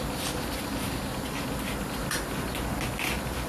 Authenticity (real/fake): real